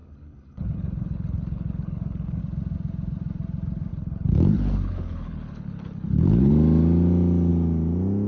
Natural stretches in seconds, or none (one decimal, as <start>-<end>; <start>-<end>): 2.4-3.9; 6.5-8.3